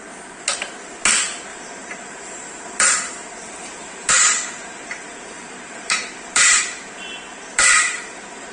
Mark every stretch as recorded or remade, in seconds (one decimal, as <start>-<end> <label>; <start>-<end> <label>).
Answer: 0.0-1.5 recorded; 1.5-6.6 remade; 6.6-7.5 recorded; 7.5-8.0 remade; 8.0-8.5 recorded

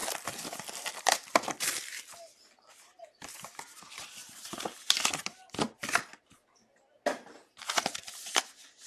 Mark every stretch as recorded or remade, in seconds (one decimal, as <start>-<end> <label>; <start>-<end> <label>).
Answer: 0.0-3.0 remade; 3.0-8.9 recorded